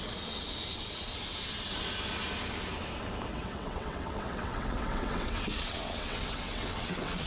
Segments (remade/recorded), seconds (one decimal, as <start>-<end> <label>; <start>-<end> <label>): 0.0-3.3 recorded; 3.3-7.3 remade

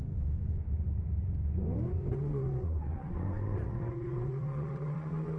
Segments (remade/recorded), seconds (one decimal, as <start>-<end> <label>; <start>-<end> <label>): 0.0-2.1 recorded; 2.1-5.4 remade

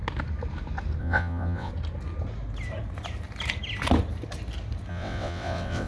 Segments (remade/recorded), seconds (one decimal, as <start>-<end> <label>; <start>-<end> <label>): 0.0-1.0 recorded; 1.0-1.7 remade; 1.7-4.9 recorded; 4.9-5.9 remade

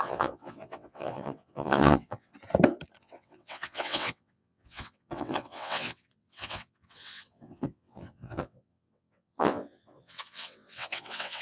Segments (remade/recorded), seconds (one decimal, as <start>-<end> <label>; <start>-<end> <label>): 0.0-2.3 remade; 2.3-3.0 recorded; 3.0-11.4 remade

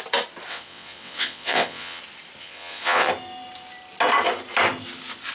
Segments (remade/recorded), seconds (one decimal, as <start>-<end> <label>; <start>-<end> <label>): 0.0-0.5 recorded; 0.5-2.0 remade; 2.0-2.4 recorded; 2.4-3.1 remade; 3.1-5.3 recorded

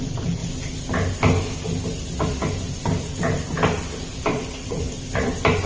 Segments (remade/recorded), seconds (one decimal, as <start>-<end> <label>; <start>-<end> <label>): 0.0-4.3 recorded; 4.3-4.8 remade; 4.8-5.7 recorded

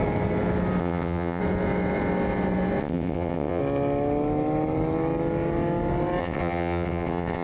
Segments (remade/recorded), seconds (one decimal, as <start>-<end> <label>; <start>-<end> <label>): 0.0-0.8 recorded; 0.8-1.4 remade; 1.4-2.8 recorded; 2.8-3.6 remade; 3.6-6.2 recorded; 6.2-7.4 remade

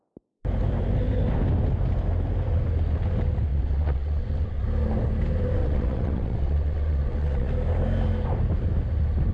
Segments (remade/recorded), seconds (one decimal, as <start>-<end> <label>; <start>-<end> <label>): 0.0-3.5 recorded; 3.5-4.6 remade; 4.6-5.6 recorded; 5.6-7.5 remade; 7.5-9.3 recorded